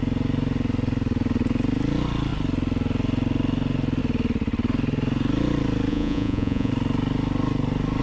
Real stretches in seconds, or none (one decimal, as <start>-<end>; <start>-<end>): 0.0-5.9; 6.7-8.0